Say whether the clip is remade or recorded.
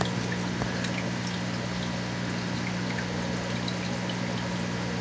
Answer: recorded